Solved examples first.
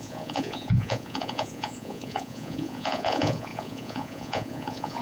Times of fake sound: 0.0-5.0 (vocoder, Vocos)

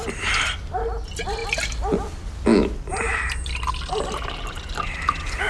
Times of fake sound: none

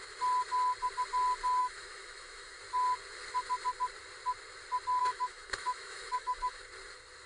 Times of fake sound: 1.6-2.6 (autoencoder, DAC-VAE); 5.0-6.6